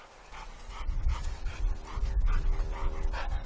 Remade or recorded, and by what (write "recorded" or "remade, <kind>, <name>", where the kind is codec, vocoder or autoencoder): recorded